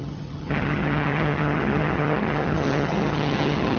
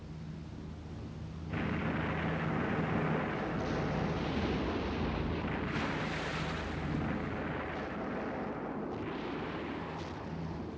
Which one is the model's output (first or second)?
first